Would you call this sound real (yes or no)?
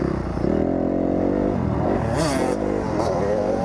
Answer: yes